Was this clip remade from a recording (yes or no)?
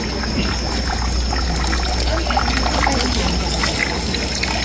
no